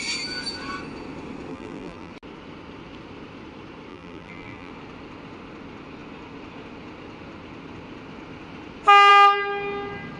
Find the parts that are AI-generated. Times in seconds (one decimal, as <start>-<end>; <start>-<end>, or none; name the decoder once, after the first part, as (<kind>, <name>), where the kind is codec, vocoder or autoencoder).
1.5-2.1 (vocoder, BigVGAN v2); 3.9-4.7